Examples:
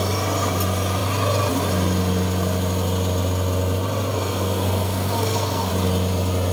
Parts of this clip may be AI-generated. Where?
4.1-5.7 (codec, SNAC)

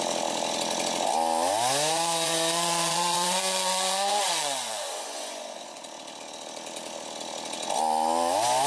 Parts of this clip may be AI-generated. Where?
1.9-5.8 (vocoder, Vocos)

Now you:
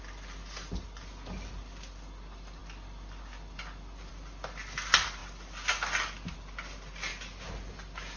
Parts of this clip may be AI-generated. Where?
none

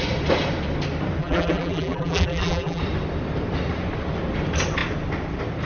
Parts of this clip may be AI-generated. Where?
1.2-2.8 (vocoder, BigVGAN v2)